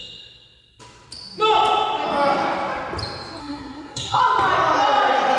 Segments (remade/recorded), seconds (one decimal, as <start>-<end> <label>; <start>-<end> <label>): 0.0-3.4 recorded; 3.4-4.2 remade; 4.2-5.4 recorded